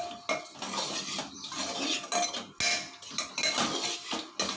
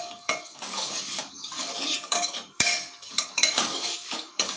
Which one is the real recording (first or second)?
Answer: first